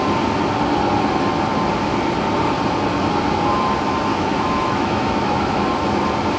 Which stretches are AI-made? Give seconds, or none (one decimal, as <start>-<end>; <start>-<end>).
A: 4.1-5.7